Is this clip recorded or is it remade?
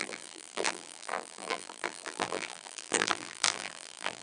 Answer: remade